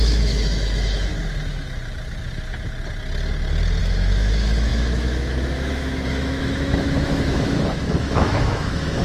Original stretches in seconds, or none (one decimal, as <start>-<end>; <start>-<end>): 1.1-3.8